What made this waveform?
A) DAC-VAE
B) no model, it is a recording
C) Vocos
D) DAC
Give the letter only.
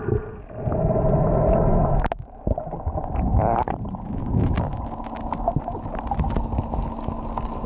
B